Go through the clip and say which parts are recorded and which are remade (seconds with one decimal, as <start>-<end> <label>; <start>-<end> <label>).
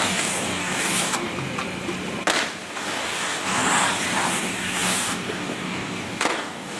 0.0-1.3 remade; 1.3-2.7 recorded; 2.7-3.6 remade; 3.6-4.3 recorded; 4.3-6.8 remade